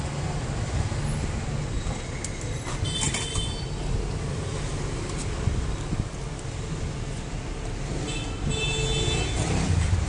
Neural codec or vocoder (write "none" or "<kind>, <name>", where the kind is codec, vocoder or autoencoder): none